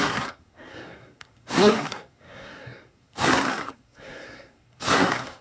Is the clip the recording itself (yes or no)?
no